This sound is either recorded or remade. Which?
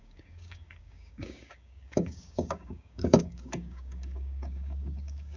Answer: remade